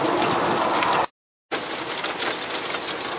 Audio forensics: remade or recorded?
recorded